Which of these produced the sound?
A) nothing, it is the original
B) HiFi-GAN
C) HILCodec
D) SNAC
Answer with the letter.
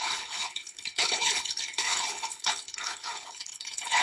C